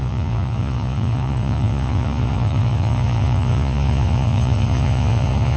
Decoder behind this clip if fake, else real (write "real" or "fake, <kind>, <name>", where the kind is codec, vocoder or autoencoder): fake, vocoder, Vocos